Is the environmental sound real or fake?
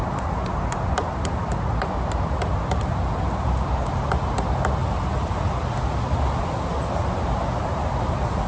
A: real